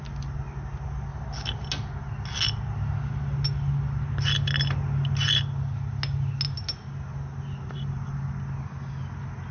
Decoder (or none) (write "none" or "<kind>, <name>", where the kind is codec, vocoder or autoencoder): none